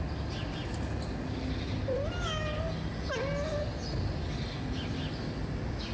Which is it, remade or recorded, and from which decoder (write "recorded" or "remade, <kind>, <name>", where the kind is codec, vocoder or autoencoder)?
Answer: recorded